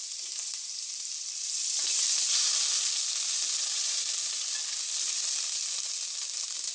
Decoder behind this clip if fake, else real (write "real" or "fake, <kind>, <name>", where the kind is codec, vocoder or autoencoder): real